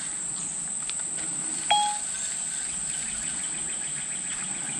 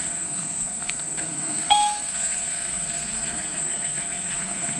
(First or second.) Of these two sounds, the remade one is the second